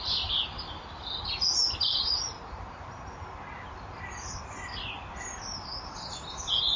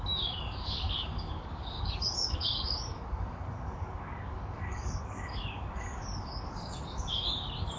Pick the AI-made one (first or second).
second